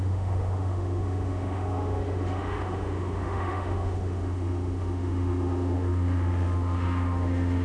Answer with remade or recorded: remade